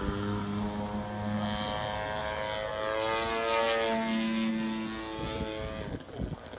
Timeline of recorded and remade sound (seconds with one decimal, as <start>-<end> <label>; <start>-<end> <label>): 0.0-6.6 recorded